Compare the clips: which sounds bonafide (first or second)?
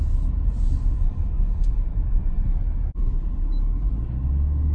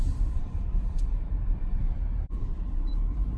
first